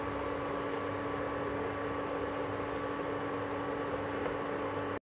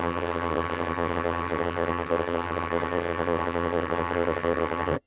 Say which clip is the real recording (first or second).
first